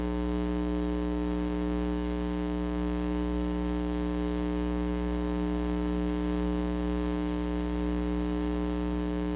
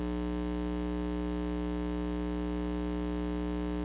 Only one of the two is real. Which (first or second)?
second